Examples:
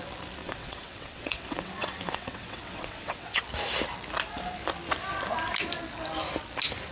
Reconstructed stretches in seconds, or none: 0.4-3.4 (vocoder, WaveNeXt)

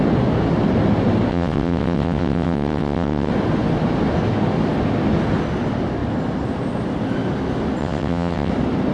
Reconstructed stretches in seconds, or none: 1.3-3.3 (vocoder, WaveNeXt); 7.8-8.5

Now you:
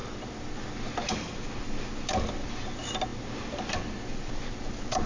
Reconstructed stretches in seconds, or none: none